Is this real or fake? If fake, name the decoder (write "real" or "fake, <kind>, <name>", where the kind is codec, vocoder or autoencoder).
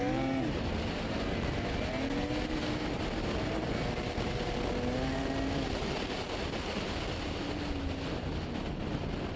real